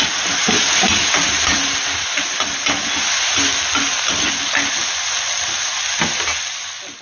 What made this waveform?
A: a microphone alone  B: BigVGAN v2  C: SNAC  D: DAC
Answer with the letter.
A